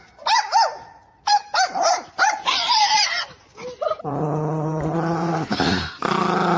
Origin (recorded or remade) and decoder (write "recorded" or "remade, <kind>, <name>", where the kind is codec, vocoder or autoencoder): remade, vocoder, BigVGAN v2